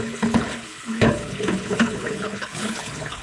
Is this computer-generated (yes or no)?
yes